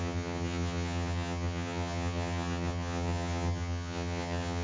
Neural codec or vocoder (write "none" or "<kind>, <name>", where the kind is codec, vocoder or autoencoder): vocoder, HiFi-GAN